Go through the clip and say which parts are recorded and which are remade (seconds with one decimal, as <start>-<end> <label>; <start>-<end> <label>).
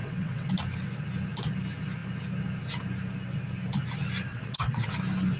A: 0.0-0.5 remade; 0.5-4.3 recorded; 4.3-4.9 remade; 4.9-5.4 recorded